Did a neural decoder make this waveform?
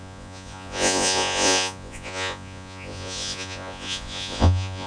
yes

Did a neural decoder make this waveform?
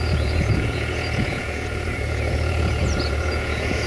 yes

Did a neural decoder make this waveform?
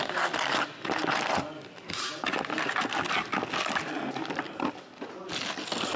no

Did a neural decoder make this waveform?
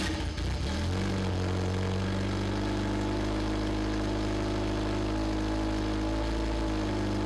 no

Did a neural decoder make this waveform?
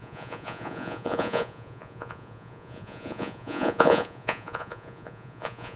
yes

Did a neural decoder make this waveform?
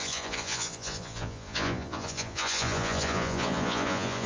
yes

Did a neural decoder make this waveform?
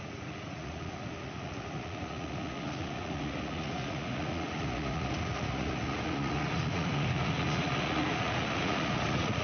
yes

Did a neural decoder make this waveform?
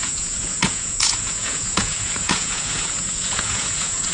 yes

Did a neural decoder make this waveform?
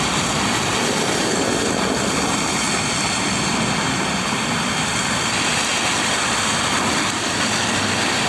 no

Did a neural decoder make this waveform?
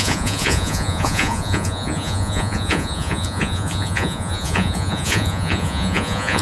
yes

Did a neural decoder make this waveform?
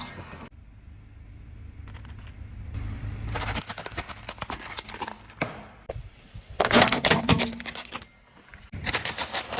no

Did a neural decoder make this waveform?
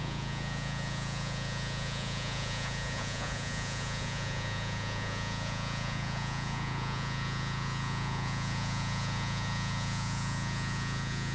yes